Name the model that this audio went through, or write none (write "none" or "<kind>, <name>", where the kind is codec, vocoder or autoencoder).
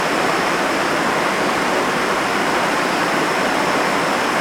none